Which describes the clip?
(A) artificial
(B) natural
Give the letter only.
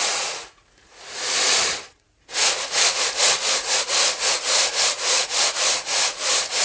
A